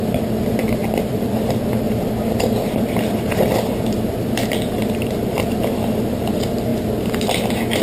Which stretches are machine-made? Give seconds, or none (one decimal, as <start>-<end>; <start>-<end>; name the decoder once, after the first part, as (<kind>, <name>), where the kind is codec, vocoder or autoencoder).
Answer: 0.8-5.5 (vocoder, BigVGAN v2); 6.7-7.3